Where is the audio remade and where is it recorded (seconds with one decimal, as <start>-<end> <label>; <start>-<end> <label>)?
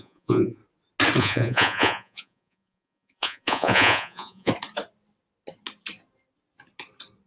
0.0-0.6 remade; 0.6-1.2 recorded; 1.2-4.5 remade; 4.5-7.3 recorded